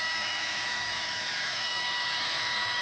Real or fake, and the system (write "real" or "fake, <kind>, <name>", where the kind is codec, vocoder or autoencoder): fake, autoencoder, DAC-VAE